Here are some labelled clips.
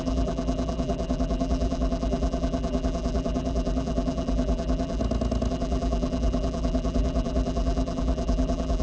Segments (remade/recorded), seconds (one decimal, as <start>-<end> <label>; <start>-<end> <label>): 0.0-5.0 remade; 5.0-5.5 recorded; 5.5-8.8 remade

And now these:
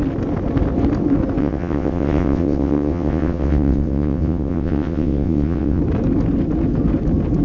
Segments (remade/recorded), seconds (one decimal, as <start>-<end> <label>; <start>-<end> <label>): 0.0-1.4 recorded; 1.4-5.8 remade; 5.8-7.4 recorded

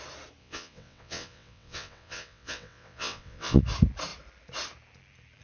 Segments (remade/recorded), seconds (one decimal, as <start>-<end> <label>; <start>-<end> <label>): 0.0-0.4 recorded; 0.4-3.6 remade; 3.6-5.4 recorded

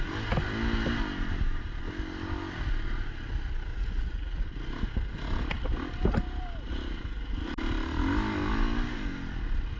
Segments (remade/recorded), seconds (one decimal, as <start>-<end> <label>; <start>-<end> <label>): 0.0-3.7 recorded; 3.7-4.4 remade; 4.4-9.8 recorded

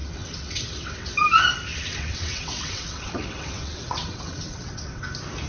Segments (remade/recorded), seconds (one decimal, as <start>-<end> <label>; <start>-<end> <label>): 0.0-1.1 remade; 1.1-1.7 recorded; 1.7-5.0 remade; 5.0-5.5 recorded